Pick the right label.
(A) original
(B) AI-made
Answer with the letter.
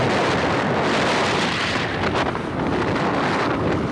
A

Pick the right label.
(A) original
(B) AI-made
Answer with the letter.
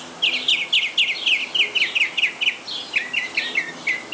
A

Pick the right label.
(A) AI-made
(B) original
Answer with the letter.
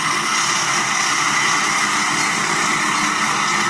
B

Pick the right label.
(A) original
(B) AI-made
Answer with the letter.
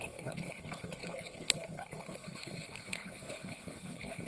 B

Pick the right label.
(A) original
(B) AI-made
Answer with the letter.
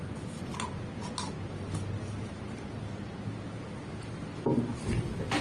A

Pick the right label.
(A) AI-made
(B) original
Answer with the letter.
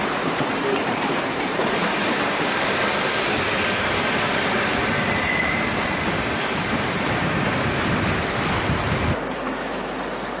B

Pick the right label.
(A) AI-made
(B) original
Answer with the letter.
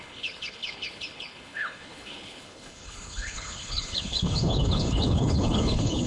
A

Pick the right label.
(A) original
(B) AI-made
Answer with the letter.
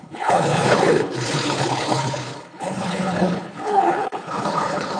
B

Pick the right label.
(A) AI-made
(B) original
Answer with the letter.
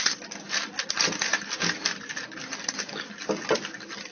B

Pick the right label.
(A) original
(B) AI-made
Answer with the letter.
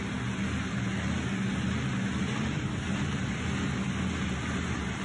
A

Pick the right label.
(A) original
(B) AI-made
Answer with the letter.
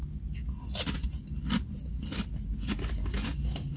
A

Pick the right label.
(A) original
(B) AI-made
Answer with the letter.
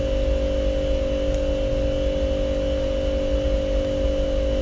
A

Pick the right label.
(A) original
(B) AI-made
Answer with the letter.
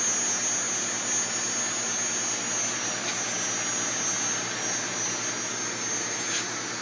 A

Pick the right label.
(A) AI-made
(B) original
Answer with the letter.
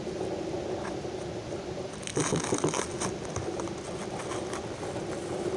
B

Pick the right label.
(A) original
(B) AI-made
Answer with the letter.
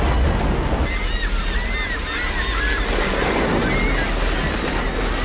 A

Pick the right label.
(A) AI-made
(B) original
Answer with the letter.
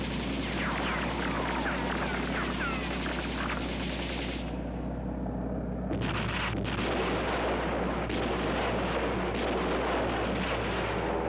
B